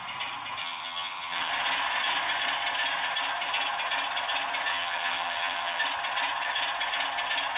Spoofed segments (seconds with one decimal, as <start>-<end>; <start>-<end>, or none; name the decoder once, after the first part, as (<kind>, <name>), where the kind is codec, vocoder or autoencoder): 0.6-1.5 (vocoder, HiFi-GAN); 4.7-5.8